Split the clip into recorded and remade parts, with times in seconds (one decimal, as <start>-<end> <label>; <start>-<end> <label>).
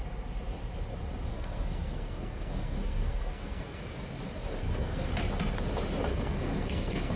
0.0-1.3 recorded; 1.3-3.8 remade; 3.8-4.6 recorded; 4.6-5.1 remade; 5.1-6.1 recorded; 6.1-7.2 remade